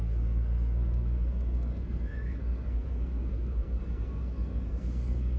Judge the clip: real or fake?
fake